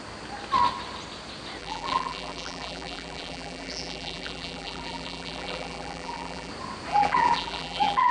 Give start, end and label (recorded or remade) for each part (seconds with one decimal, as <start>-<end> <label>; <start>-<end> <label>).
0.0-1.6 recorded; 1.6-6.5 remade; 6.5-6.9 recorded; 6.9-8.1 remade